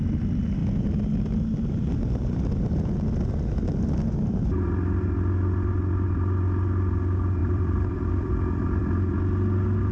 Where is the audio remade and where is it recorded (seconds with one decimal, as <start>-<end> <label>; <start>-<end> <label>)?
0.0-7.4 recorded; 7.4-8.8 remade; 8.8-9.9 recorded